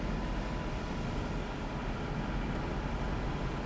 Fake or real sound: real